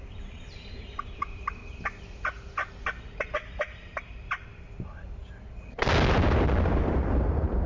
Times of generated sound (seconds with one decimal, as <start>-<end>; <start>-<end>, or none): 0.0-1.6; 2.7-5.2; 6.1-7.7